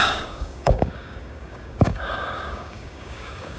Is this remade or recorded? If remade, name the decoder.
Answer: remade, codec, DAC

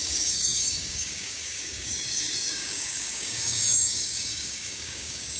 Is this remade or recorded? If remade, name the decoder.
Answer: remade, codec, DAC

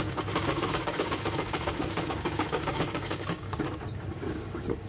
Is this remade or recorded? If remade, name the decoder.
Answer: remade, codec, DAC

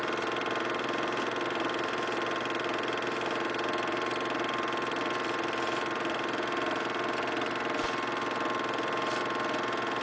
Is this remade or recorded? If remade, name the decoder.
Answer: recorded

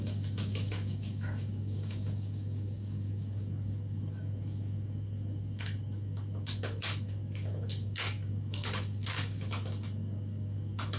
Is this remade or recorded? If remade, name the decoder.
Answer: remade, codec, DAC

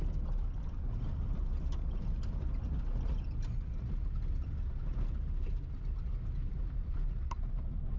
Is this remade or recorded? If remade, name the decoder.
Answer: recorded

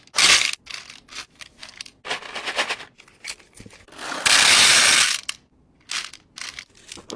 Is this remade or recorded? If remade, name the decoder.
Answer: recorded